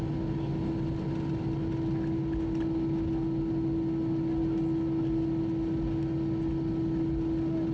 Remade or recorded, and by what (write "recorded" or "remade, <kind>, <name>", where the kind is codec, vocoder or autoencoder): recorded